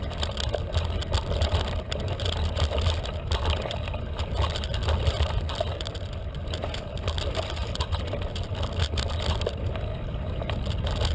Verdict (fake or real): real